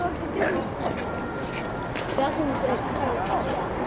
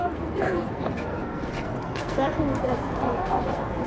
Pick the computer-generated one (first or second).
second